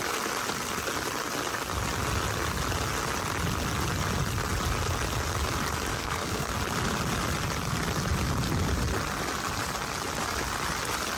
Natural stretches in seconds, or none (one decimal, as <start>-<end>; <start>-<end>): 0.0-5.9; 6.5-11.2